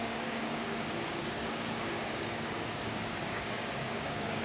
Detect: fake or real fake